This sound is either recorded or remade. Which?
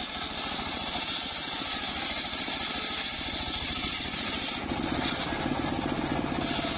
recorded